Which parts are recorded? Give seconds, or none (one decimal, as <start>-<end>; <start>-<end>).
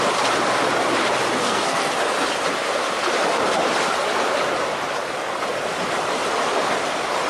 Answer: 0.0-1.4; 1.9-7.3